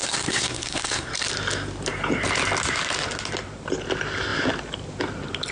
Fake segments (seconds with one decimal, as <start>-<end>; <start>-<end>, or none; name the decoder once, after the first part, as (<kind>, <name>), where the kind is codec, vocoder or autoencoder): 0.0-1.1 (codec, SNAC)